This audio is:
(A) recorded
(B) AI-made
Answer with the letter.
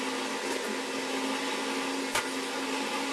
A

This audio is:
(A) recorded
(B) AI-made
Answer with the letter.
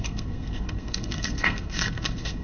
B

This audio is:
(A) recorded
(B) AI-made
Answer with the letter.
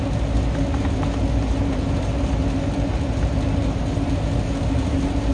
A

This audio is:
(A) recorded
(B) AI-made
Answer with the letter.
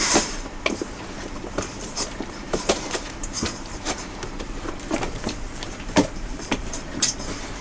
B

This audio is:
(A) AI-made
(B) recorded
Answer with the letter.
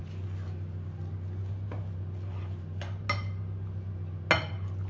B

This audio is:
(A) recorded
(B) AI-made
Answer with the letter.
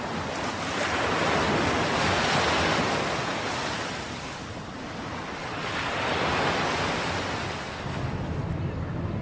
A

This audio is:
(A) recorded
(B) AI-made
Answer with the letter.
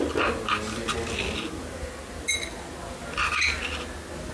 A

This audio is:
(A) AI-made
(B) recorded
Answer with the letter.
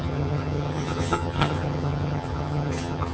A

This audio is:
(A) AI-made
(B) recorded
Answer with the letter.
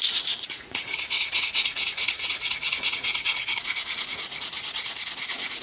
A